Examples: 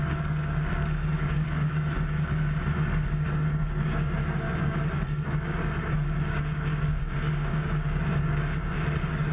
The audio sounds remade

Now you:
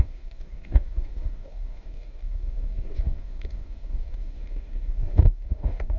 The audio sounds remade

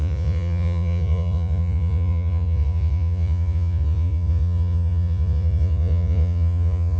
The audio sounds remade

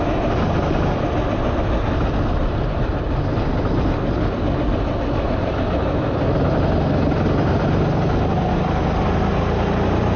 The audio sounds recorded